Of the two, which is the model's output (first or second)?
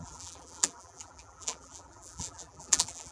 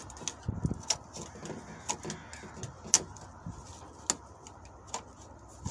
first